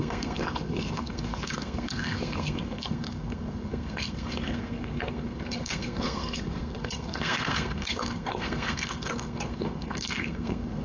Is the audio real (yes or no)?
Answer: no